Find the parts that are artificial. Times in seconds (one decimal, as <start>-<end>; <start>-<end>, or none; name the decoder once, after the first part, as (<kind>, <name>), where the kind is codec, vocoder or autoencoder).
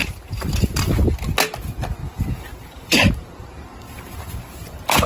0.0-0.5 (vocoder, BigVGAN v2); 2.0-5.1